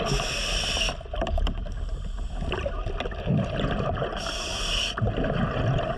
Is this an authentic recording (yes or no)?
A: yes